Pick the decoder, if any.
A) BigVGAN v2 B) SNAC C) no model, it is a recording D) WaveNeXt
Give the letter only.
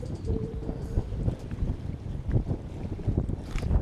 A